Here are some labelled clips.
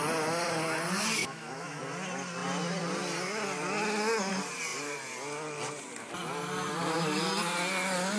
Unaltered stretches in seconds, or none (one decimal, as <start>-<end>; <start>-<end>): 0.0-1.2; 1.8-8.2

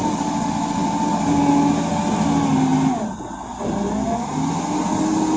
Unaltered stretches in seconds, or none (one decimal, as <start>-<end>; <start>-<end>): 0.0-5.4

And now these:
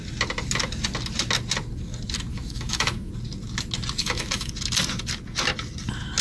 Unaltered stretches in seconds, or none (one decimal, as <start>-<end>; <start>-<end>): 0.0-2.3; 3.1-4.0; 4.5-6.2

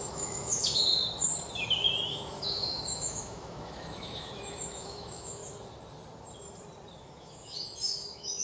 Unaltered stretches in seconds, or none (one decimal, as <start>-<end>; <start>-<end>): 1.3-2.0; 5.4-7.0

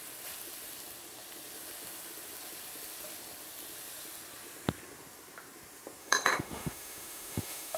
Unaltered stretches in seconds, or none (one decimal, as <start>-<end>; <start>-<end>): 0.0-6.0